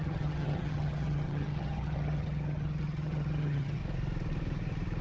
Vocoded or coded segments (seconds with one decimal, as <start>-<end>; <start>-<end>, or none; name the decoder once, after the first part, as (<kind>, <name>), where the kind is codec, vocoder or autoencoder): 0.0-3.8 (vocoder, HiFi-GAN)